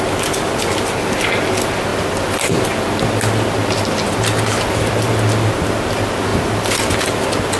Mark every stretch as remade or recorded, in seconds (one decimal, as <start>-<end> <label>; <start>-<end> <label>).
0.0-7.6 recorded